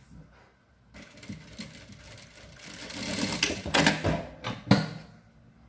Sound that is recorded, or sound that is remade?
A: recorded